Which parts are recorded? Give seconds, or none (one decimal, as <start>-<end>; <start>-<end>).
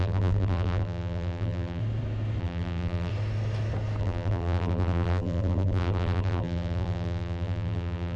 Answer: 1.8-2.4; 3.1-4.0